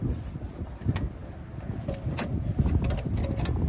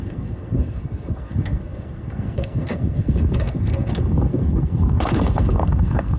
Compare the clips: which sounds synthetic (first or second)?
second